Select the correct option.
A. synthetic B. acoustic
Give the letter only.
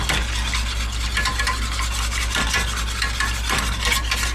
B